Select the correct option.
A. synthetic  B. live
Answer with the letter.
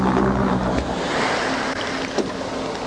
B